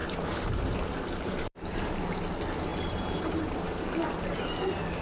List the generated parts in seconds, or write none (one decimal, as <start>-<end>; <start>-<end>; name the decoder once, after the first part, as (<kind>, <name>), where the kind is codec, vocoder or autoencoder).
0.0-2.0 (vocoder, BigVGAN v2); 2.7-4.6